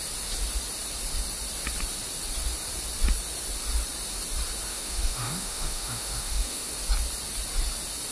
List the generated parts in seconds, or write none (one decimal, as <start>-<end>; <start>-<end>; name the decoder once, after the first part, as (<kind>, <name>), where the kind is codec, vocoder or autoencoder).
4.7-6.7 (autoencoder, DAC-VAE)